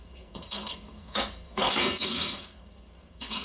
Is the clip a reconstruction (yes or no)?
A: yes